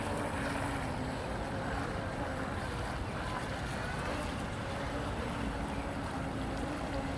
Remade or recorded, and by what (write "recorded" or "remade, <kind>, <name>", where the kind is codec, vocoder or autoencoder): recorded